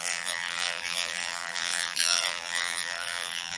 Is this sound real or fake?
fake